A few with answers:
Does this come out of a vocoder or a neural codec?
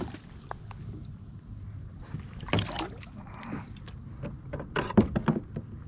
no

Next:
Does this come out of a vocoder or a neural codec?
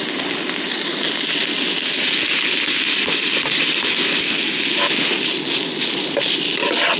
no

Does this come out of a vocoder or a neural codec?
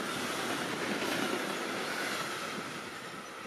no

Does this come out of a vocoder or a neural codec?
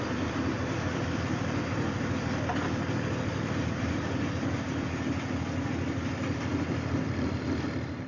no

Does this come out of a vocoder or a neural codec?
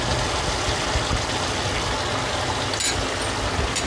no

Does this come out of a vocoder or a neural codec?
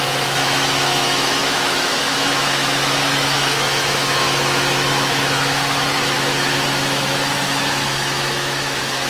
yes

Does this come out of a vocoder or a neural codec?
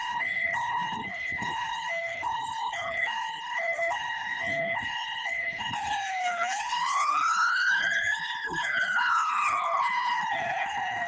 yes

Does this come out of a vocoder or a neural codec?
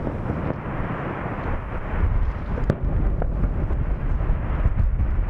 yes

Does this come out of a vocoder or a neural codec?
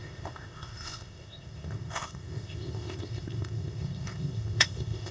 yes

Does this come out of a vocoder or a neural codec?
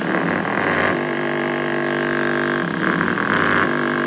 no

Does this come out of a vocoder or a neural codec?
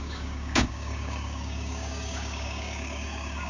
yes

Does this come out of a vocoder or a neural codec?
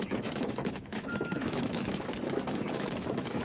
yes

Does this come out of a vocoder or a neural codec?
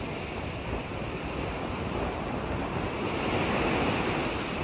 no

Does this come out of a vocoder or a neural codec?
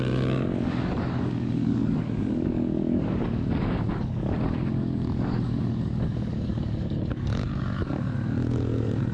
yes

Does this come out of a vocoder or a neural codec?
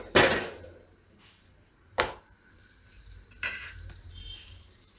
yes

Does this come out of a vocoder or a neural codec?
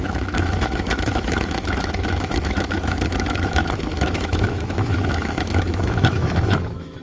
yes